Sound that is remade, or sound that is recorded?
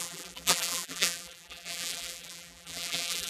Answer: remade